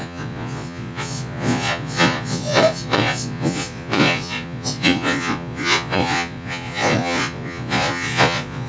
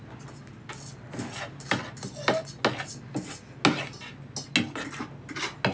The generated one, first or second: first